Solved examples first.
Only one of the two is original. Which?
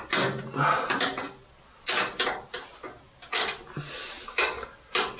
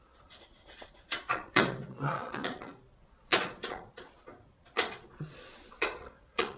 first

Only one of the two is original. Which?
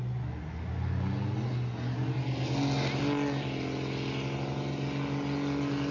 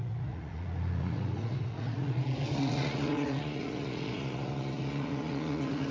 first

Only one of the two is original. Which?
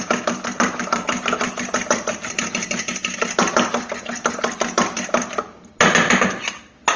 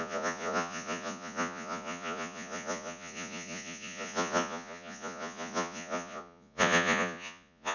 first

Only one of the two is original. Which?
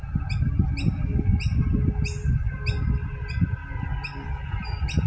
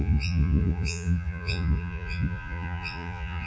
first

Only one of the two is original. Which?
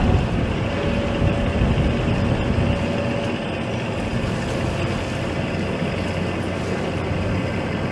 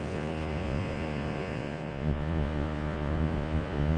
first